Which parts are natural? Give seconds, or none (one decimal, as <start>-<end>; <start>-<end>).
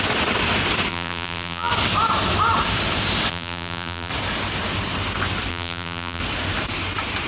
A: 0.0-0.9; 1.7-3.3; 4.1-5.5; 6.2-7.3